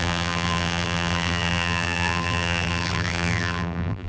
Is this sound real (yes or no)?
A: no